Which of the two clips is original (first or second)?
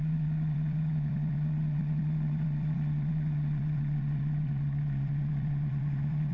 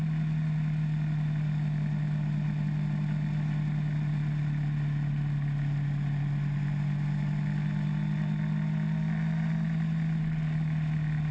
second